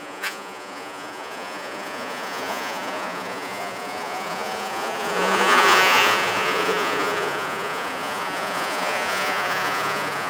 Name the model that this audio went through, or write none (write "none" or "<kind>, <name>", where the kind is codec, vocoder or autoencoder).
vocoder, Vocos